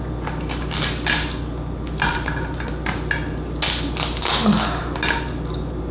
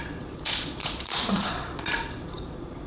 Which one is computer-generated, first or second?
second